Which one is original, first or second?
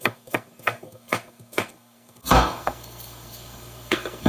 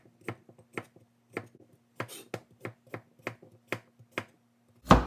second